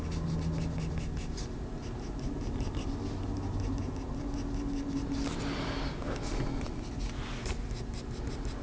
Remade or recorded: recorded